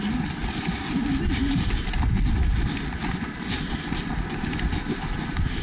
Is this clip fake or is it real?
real